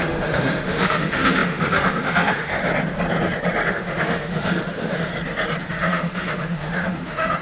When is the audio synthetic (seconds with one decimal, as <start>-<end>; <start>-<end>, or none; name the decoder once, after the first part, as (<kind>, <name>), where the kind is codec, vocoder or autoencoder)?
0.0-2.6 (autoencoder, DAC-VAE); 3.7-5.1; 5.7-7.4